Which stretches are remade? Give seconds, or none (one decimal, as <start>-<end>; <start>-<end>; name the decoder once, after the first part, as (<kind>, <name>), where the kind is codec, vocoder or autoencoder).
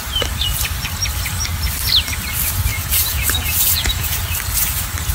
2.7-4.2 (vocoder, Vocos)